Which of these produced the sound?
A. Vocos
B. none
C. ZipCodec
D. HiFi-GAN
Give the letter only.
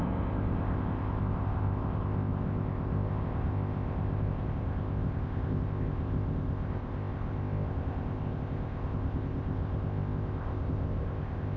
C